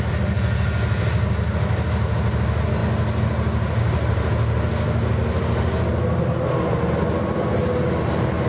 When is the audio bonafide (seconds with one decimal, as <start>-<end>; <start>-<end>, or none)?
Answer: 0.0-8.5